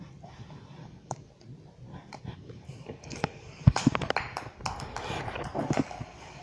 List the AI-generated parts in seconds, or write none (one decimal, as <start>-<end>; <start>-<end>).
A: 0.8-1.3; 2.3-3.9; 5.6-6.4